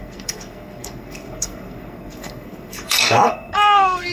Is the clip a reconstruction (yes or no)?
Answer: yes